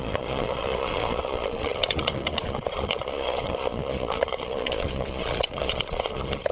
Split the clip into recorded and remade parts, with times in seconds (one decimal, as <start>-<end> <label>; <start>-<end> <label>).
0.0-6.5 remade